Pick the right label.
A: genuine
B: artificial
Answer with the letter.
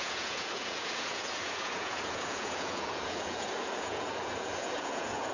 B